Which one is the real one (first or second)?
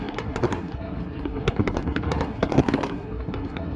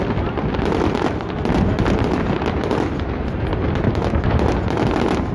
second